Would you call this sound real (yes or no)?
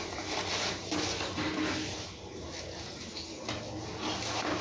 yes